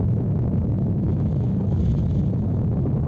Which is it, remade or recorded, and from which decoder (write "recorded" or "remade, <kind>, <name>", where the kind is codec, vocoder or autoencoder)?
recorded